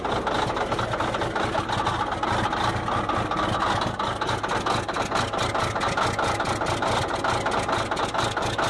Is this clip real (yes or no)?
yes